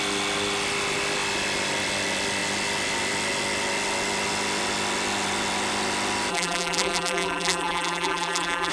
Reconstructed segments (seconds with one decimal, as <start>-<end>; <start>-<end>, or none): 6.3-8.7